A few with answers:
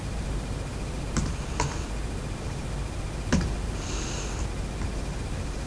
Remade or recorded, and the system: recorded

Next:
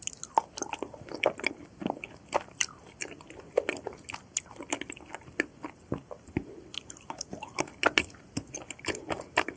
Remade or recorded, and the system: recorded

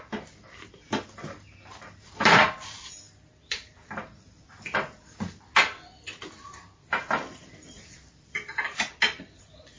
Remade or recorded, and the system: recorded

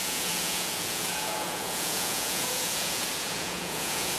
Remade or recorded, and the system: remade, vocoder, Vocos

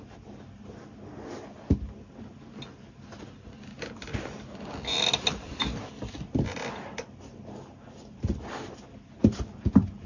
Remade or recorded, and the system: recorded